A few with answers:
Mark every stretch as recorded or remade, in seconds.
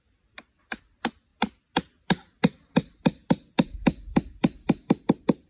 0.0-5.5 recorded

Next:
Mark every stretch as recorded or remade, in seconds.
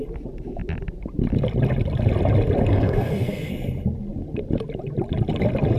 0.0-2.7 recorded; 2.7-3.5 remade; 3.5-5.8 recorded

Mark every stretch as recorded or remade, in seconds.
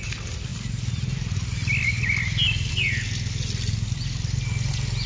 0.0-5.1 recorded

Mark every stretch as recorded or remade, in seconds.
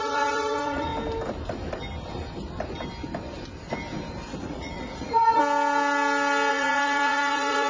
0.0-0.9 remade; 0.9-4.4 recorded; 4.4-5.4 remade; 5.4-6.5 recorded; 6.5-7.7 remade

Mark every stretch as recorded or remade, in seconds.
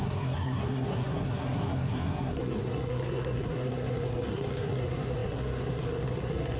0.0-6.6 remade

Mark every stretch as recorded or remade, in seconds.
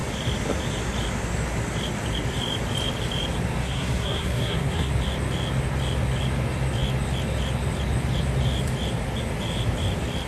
0.0-3.6 recorded; 3.6-4.9 remade; 4.9-10.3 recorded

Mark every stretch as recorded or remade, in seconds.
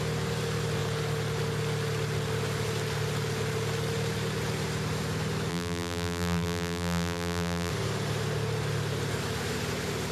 0.0-5.5 recorded; 5.5-7.7 remade; 7.7-10.1 recorded